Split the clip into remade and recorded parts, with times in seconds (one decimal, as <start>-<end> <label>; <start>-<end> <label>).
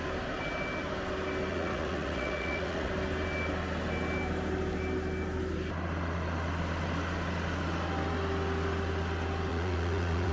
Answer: 0.0-1.5 recorded; 1.5-2.9 remade; 2.9-9.5 recorded; 9.5-10.3 remade